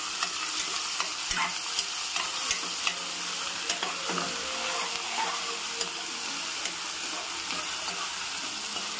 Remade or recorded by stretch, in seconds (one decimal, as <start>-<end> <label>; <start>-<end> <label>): 0.0-9.0 recorded